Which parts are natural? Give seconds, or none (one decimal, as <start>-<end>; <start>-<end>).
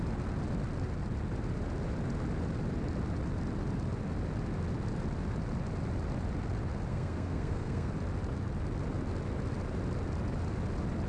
0.0-6.9; 7.9-11.1